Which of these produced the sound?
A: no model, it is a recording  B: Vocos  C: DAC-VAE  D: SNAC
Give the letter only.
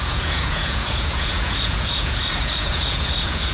B